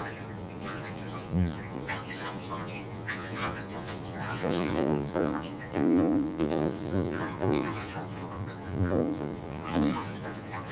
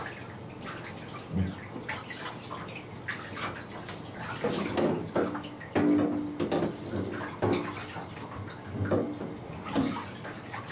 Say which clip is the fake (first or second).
first